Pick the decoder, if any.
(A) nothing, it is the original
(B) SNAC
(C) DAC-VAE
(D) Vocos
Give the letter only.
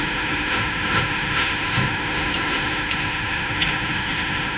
C